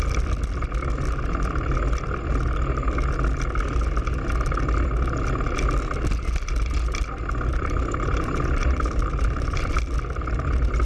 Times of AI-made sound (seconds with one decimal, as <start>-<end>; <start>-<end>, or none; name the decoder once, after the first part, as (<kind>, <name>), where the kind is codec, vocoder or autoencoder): 7.5-9.8 (vocoder, BigVGAN v2)